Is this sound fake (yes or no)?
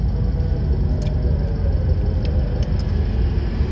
no